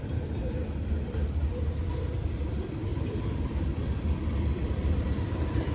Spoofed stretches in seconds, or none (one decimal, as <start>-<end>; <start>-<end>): 0.0-5.7